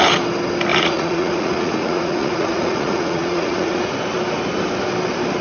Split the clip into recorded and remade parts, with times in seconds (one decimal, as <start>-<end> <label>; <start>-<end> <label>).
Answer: 0.0-0.7 recorded; 0.7-3.9 remade; 3.9-5.4 recorded